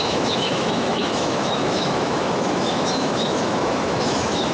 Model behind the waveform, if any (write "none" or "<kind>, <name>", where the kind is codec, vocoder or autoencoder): autoencoder, DAC-VAE